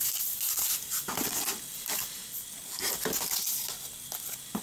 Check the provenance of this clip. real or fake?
real